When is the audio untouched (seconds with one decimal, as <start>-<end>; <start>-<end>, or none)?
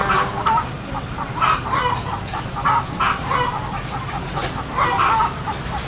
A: 1.7-5.9